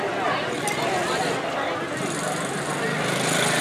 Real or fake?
real